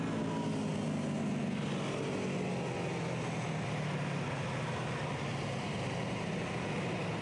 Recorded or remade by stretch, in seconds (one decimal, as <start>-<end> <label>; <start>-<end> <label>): 0.0-7.2 recorded